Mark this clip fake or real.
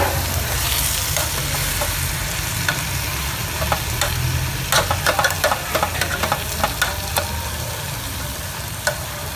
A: real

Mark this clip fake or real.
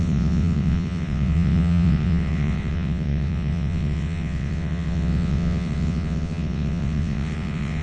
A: fake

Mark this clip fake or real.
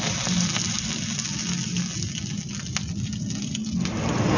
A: real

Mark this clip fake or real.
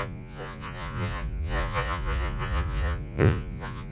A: fake